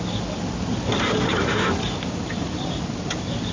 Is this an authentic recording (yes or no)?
yes